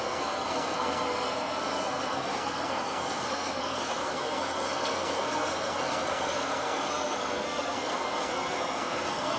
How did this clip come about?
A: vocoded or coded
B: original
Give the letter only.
A